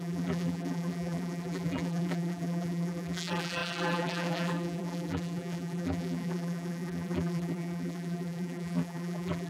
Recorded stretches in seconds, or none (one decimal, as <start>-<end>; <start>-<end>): none